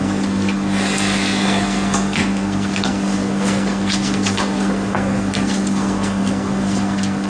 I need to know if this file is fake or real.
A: fake